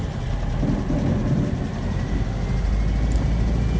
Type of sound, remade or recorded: recorded